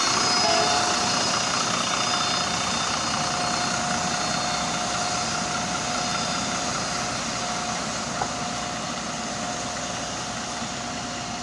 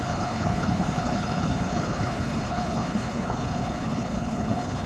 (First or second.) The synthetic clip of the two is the second